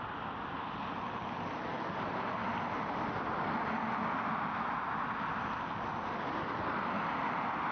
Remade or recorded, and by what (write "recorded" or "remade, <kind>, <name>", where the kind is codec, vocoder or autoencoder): recorded